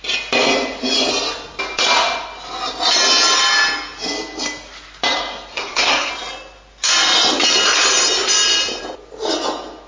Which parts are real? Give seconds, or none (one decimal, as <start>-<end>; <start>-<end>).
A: 0.0-5.5; 6.1-9.9